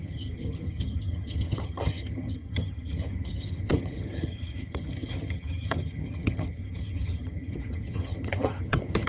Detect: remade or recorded remade